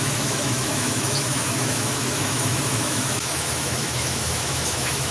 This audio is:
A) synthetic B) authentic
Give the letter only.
A